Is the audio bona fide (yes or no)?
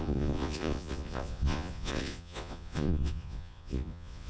no